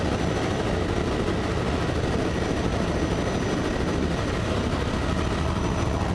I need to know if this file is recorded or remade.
recorded